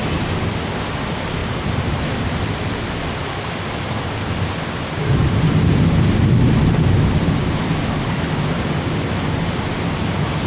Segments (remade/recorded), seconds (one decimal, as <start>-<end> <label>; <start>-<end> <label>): 0.0-1.4 recorded; 1.4-2.4 remade; 2.4-10.5 recorded